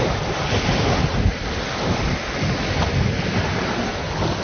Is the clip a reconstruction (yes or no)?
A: no